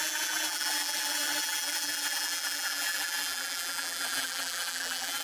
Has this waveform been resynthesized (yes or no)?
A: yes